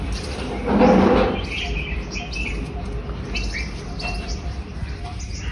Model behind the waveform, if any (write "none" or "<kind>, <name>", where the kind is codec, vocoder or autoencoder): none